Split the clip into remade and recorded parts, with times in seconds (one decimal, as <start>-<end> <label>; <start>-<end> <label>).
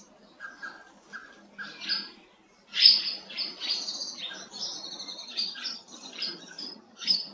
0.0-5.1 recorded; 5.1-7.3 remade